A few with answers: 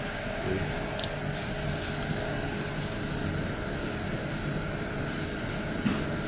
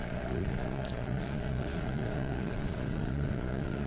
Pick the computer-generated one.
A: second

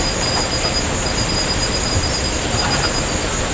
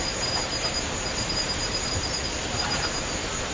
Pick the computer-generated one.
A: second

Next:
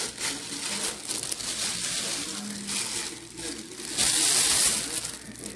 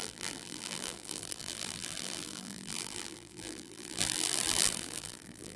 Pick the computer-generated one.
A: second